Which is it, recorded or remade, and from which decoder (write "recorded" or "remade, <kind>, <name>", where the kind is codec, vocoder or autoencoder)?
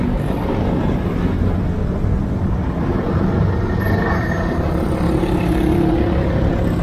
recorded